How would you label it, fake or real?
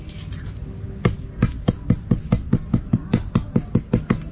real